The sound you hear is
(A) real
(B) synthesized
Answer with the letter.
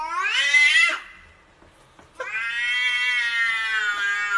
A